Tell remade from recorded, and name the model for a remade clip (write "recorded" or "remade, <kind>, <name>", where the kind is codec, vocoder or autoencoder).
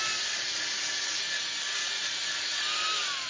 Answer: recorded